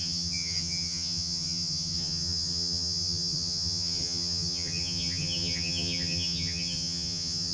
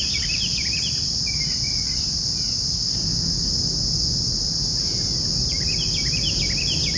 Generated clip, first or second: first